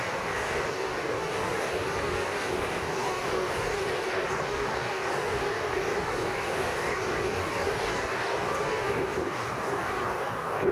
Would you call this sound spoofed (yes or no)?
yes